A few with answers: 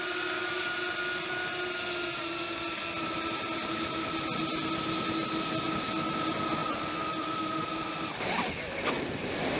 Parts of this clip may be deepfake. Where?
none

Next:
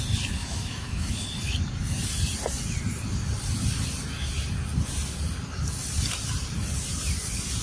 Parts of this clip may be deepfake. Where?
0.4-1.1 (autoencoder, DAC-VAE)

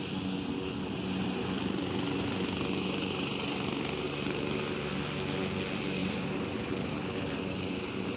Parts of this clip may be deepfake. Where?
6.0-8.2 (vocoder, BigVGAN v2)

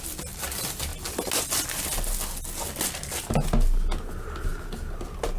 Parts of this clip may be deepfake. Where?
none